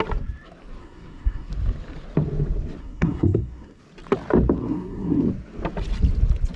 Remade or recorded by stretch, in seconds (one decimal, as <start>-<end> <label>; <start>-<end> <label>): 0.0-0.8 recorded; 0.8-1.5 remade; 1.5-2.8 recorded; 2.8-3.8 remade; 3.8-4.6 recorded; 4.6-5.2 remade; 5.2-6.6 recorded